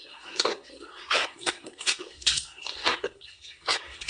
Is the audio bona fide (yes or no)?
no